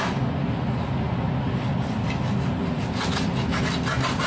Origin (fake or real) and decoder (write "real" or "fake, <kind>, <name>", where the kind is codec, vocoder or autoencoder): real